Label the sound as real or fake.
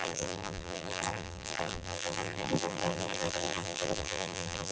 fake